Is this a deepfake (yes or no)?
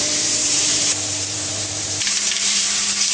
yes